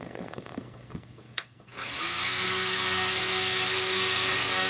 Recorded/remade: remade